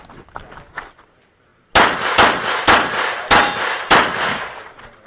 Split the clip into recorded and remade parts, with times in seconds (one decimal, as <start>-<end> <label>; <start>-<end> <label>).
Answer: 0.0-5.1 recorded